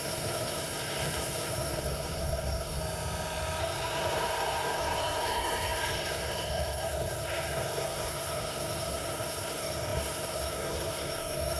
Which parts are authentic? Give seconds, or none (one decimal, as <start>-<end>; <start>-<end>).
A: 2.8-3.6